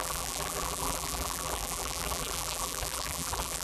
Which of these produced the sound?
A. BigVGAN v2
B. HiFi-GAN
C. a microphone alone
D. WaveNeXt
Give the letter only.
A